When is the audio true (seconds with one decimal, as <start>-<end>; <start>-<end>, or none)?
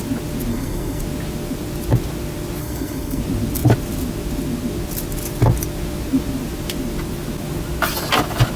0.0-0.5; 1.0-2.6; 3.2-8.6